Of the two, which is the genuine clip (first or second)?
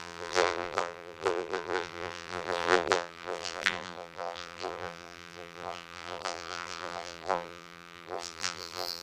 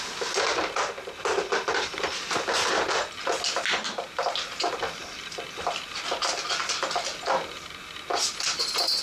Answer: second